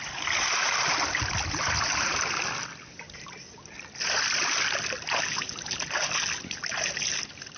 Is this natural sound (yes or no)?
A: yes